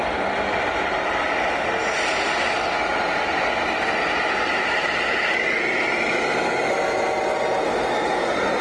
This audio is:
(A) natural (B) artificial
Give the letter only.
A